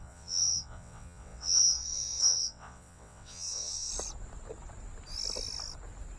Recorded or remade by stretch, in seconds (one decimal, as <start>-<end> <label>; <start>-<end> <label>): 0.0-3.9 remade; 3.9-6.2 recorded